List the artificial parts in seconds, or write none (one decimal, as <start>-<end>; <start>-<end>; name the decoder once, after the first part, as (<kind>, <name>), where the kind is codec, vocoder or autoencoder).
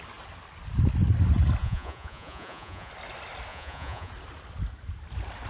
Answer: 1.6-2.9 (vocoder, Vocos); 3.5-4.1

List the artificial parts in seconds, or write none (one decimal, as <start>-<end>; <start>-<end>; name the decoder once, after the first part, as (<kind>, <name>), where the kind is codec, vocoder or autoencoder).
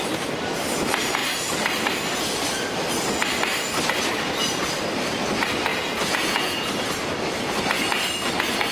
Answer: 5.7-6.7 (vocoder, Vocos)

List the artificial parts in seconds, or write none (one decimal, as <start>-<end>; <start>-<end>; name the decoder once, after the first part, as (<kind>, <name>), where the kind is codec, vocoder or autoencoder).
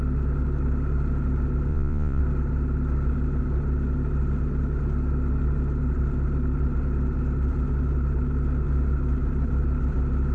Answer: 1.7-2.2 (vocoder, Vocos)